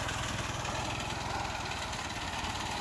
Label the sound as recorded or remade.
recorded